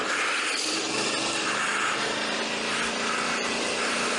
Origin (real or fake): real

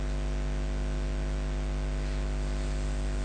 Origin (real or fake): real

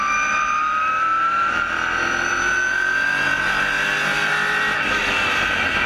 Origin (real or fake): real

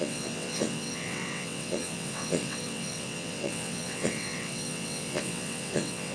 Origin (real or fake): fake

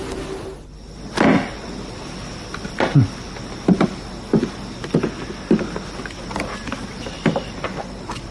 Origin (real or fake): real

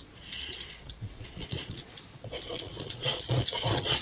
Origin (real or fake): fake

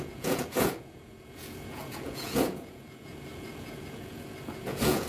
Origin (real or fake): fake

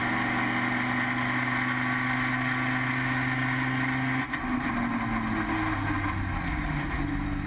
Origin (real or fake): real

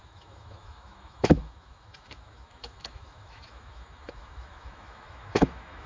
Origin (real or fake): fake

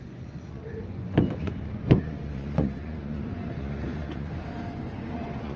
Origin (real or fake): fake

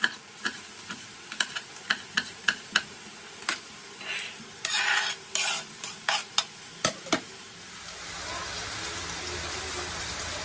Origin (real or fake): real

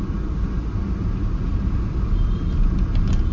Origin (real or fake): real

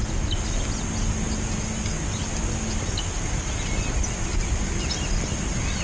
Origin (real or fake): real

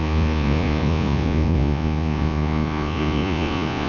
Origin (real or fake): fake